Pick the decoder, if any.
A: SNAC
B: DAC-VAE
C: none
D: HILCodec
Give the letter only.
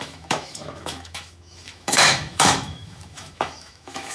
B